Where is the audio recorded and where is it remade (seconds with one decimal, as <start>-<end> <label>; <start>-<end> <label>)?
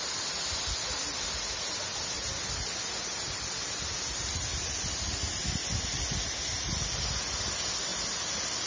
0.0-8.7 recorded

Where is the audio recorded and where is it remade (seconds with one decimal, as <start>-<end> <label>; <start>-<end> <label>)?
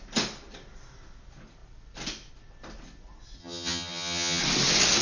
0.0-3.4 recorded; 3.4-4.4 remade; 4.4-5.0 recorded